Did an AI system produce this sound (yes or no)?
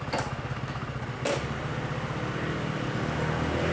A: no